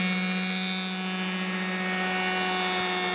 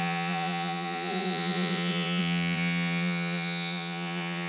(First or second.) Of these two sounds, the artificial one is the second